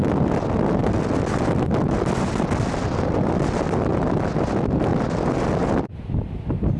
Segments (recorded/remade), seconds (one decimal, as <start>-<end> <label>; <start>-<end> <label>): 0.0-6.8 recorded